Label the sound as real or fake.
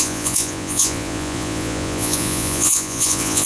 fake